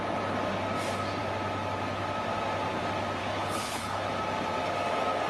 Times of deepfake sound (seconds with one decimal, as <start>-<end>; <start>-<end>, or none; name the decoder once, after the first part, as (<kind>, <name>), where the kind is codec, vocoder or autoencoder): 3.2-4.1 (codec, HILCodec)